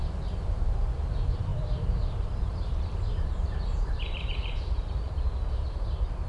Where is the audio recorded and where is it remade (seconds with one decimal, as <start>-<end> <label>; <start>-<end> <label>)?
0.0-6.3 remade